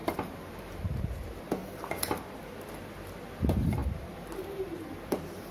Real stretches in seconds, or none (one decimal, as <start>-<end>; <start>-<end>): 1.6-3.4